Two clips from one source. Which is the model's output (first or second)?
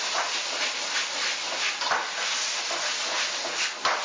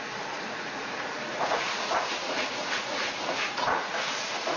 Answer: second